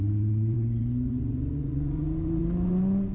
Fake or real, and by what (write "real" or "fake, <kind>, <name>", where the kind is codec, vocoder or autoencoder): fake, vocoder, Vocos